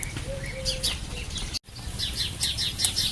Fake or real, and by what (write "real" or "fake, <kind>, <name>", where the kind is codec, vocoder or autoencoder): real